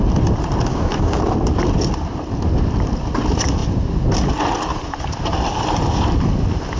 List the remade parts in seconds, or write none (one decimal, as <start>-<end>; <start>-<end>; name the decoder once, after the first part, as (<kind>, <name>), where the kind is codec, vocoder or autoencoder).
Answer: 0.7-1.2 (codec, DAC)